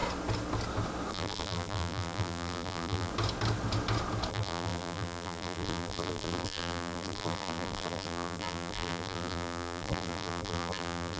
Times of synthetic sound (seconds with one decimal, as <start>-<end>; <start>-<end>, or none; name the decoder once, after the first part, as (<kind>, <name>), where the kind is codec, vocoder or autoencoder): 1.1-3.1 (vocoder, BigVGAN v2); 4.3-11.2